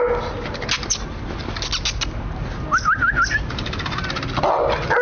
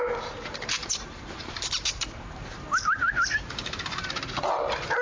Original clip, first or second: first